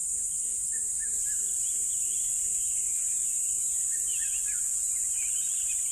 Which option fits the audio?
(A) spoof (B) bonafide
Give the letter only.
B